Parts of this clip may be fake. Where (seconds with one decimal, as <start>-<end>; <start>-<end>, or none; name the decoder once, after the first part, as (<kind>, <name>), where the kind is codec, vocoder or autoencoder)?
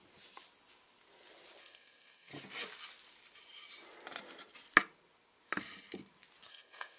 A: 1.6-2.3 (codec, SNAC); 6.5-7.0